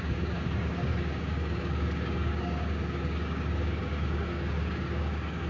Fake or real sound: fake